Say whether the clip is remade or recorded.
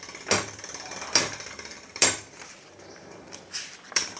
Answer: remade